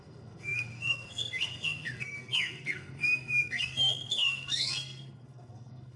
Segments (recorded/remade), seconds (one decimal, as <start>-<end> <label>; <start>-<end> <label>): 0.0-6.0 remade